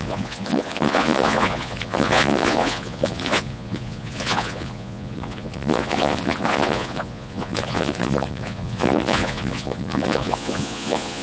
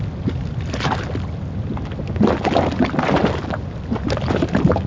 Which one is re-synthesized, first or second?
first